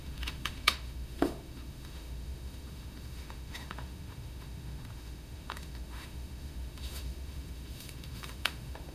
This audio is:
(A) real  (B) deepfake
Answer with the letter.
B